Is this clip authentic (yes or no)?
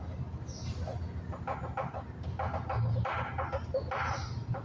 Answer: yes